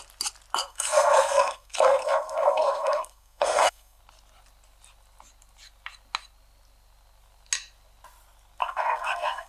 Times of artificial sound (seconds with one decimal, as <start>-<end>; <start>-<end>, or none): 0.6-4.0; 8.6-9.5